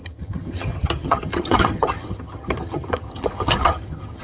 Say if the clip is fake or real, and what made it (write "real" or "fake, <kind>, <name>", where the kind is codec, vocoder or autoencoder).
fake, vocoder, HiFi-GAN